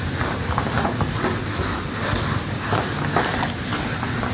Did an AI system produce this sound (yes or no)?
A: no